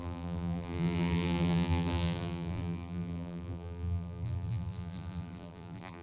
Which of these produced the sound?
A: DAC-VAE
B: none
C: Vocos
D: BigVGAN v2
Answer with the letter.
D